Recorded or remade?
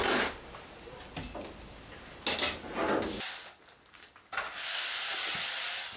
recorded